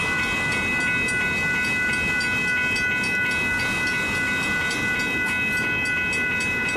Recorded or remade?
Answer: recorded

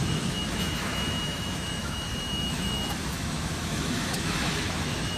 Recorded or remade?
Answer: remade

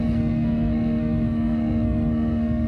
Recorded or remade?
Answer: remade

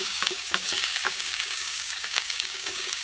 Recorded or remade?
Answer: remade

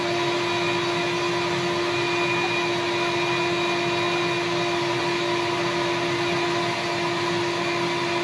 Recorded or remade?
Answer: recorded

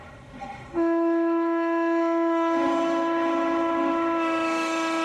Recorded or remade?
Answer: remade